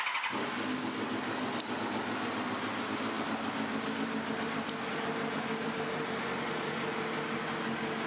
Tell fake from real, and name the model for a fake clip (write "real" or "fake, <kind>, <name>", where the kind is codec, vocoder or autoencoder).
real